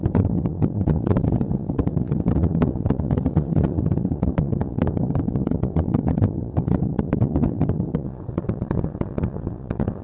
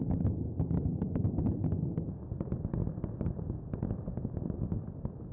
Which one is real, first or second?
second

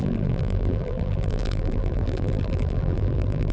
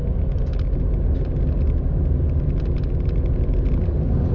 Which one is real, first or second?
second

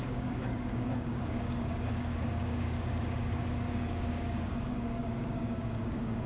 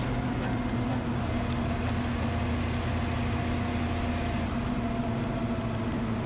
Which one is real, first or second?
second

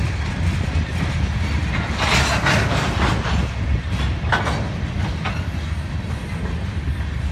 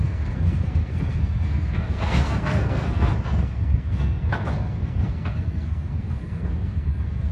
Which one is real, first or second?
first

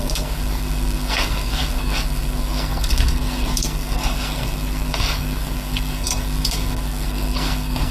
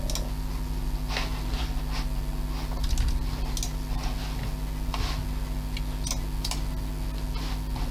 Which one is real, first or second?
second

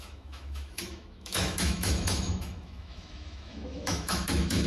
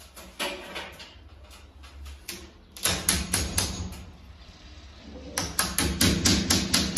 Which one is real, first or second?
second